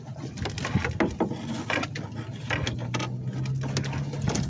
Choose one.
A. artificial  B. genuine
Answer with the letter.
B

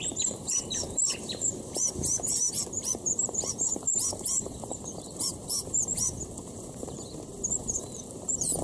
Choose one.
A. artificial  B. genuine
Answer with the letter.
A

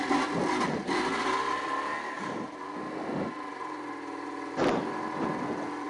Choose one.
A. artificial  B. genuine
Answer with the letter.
B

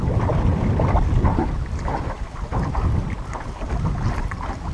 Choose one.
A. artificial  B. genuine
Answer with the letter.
B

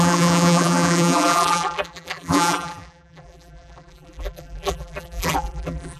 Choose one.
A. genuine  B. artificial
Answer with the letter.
B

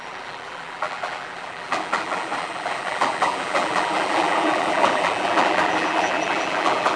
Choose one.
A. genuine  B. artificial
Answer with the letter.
B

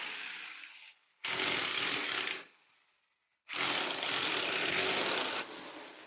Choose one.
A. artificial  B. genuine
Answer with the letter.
B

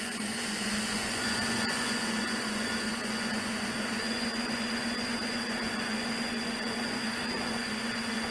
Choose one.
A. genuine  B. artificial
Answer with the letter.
B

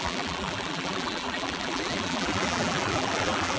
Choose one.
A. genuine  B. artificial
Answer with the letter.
B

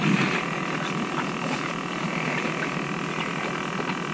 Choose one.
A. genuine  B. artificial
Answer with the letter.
A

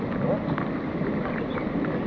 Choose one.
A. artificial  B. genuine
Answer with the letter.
B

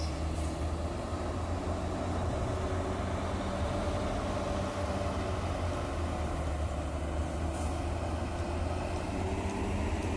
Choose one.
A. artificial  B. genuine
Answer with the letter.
B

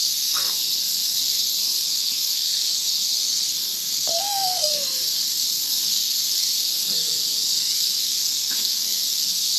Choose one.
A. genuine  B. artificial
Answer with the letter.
B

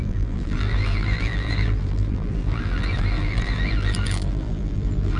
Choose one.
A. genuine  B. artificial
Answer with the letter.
B